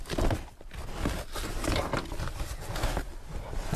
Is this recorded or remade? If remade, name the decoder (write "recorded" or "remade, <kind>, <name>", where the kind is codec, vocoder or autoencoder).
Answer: recorded